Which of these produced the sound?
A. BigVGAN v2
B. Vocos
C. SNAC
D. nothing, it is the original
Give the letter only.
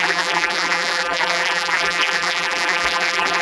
A